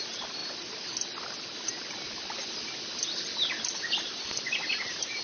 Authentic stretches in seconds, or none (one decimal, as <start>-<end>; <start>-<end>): 0.4-3.5